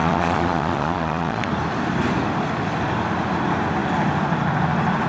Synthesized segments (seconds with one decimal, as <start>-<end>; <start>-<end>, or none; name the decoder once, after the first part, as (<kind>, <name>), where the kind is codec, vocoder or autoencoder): 0.0-1.5 (vocoder, Vocos)